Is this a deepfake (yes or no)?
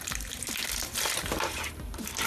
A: no